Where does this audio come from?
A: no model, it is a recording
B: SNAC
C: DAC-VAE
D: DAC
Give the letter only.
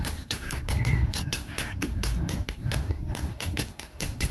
B